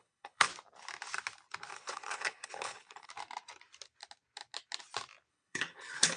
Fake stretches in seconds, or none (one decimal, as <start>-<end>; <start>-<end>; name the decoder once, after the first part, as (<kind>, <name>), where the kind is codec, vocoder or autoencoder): 0.0-0.5 (codec, HILCodec); 1.7-3.1; 5.3-6.2